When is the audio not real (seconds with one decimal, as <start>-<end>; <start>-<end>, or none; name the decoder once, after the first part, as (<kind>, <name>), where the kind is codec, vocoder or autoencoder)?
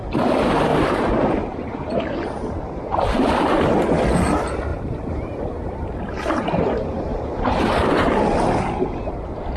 0.7-3.5 (vocoder, BigVGAN v2); 4.7-8.1